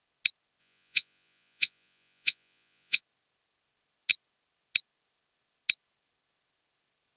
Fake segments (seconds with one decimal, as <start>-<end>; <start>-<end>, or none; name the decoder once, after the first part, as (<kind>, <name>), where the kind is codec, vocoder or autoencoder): 0.6-3.0 (vocoder, Vocos)